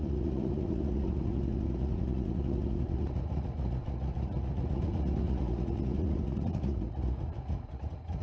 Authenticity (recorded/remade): remade